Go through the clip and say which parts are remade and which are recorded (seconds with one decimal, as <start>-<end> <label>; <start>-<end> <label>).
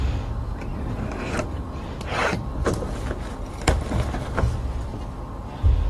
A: 0.0-0.7 recorded; 0.7-1.6 remade; 1.6-2.3 recorded; 2.3-4.5 remade; 4.5-5.9 recorded